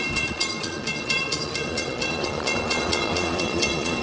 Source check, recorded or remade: remade